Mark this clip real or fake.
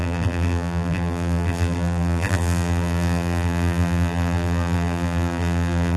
fake